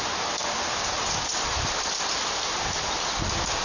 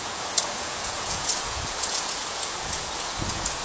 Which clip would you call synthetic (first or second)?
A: second